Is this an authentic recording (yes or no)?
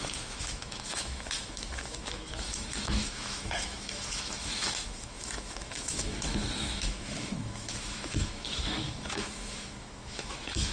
no